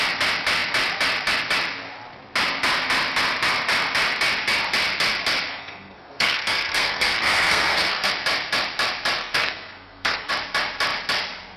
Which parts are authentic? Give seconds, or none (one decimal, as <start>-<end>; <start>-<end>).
0.0-5.5; 8.1-9.2; 10.3-11.6